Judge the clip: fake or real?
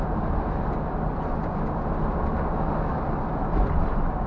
real